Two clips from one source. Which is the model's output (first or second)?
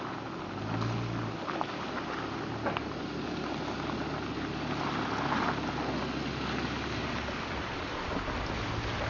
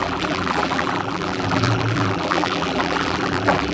second